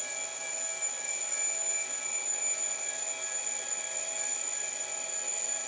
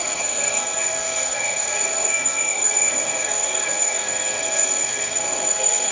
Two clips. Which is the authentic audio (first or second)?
first